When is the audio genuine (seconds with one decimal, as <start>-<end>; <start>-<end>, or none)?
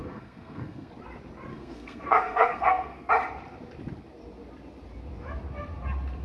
0.9-1.5; 3.1-6.2